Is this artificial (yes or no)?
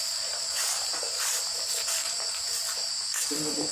no